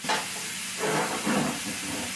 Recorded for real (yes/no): yes